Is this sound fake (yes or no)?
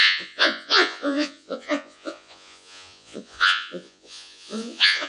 yes